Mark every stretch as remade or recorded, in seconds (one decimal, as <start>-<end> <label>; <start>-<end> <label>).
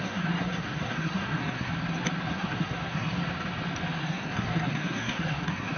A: 0.0-1.7 remade; 1.7-2.3 recorded; 2.3-3.2 remade; 3.2-4.0 recorded; 4.0-5.8 remade